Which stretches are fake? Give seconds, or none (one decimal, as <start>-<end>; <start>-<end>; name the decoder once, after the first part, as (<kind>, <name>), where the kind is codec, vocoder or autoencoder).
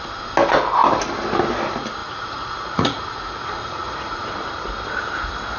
2.0-4.2 (vocoder, Vocos)